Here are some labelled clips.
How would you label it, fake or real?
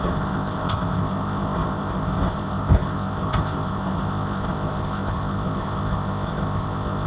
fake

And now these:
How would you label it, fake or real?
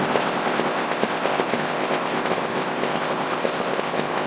fake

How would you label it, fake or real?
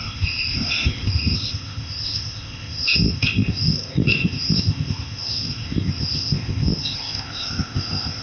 fake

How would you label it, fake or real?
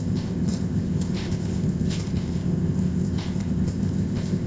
fake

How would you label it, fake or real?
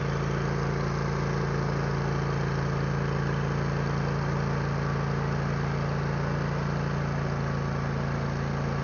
real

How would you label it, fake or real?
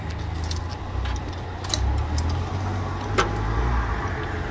real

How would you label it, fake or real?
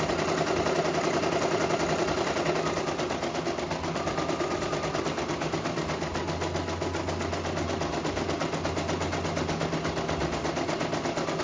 real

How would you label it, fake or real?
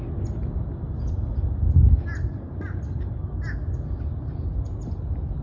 real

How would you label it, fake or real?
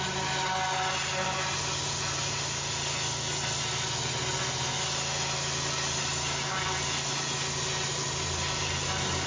real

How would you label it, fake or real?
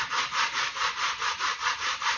real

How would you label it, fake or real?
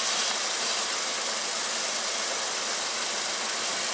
real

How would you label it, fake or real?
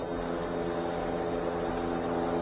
real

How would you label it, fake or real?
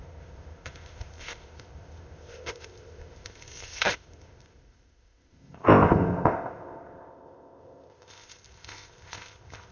fake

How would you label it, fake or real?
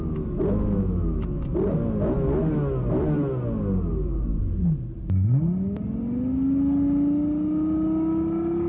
real